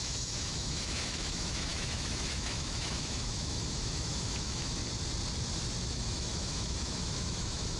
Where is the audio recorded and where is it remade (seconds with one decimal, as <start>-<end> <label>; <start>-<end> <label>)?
0.0-4.8 remade; 4.8-5.9 recorded; 5.9-7.8 remade